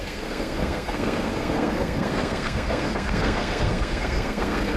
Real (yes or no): no